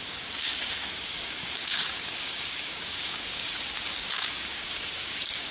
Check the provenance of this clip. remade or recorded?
remade